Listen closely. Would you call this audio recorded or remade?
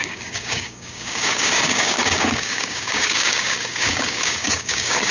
remade